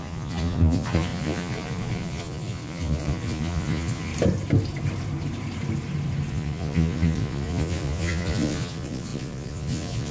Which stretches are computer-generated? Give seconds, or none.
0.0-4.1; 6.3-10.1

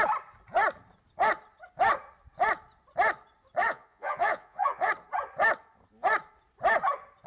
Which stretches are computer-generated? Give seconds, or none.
3.6-4.9

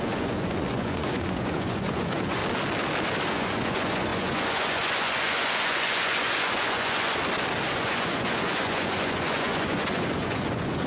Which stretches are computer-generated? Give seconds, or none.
0.0-2.4; 3.3-7.2; 7.7-10.9

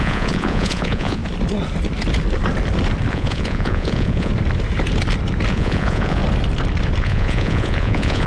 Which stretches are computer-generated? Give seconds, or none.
0.0-1.2; 3.1-4.3; 5.5-6.2; 7.0-8.3

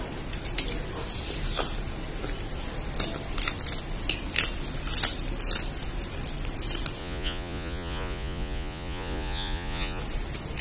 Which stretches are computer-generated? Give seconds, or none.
7.0-10.0

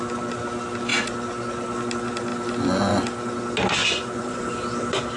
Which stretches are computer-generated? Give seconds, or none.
3.8-4.4

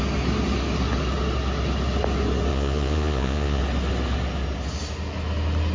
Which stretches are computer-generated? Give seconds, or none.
2.5-3.6

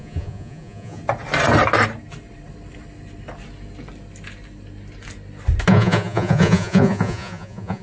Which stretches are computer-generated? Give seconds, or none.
0.0-1.0; 5.7-7.8